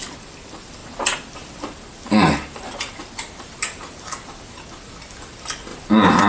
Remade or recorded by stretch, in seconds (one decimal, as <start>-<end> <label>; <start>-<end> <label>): 0.0-5.7 recorded; 5.7-6.3 remade